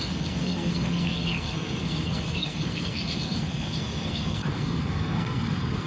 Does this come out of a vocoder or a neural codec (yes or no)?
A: yes